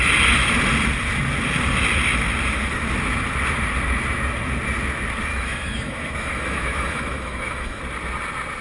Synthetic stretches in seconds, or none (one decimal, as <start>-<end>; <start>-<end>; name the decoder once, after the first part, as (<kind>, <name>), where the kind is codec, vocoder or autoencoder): 5.3-7.8 (autoencoder, DAC-VAE)

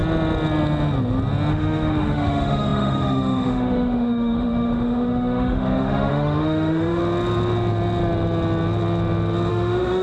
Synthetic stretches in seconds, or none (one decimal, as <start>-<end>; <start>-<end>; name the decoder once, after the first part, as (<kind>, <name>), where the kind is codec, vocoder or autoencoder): 1.5-7.0 (autoencoder, DAC-VAE); 9.5-10.0

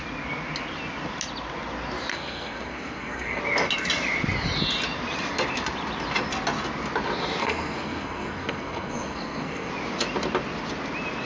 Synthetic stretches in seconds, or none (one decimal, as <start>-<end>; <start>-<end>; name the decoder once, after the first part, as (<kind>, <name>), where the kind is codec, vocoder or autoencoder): 2.1-3.4 (codec, SNAC); 7.4-9.7

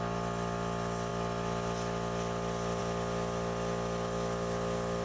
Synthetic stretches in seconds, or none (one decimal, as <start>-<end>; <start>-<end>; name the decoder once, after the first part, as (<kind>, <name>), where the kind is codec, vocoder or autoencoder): none

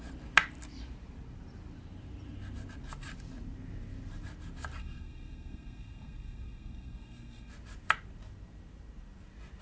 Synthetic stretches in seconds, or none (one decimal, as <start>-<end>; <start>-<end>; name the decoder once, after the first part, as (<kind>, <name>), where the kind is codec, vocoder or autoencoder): 4.8-7.5 (codec, SNAC)

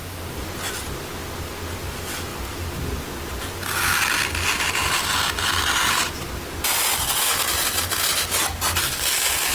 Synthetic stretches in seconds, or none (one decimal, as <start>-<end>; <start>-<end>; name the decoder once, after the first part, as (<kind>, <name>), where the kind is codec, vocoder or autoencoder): none